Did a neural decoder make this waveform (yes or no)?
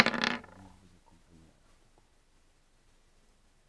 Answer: no